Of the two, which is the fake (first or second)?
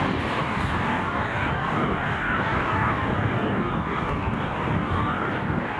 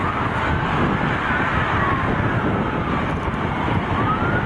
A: first